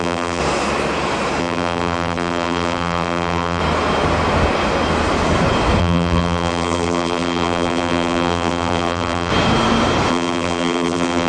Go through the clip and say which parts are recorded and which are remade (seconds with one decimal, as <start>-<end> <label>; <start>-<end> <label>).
0.0-0.4 remade; 0.4-1.4 recorded; 1.4-3.6 remade; 3.6-5.8 recorded; 5.8-9.3 remade; 9.3-10.1 recorded; 10.1-11.3 remade